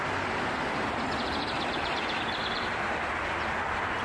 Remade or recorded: remade